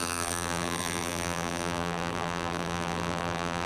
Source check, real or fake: fake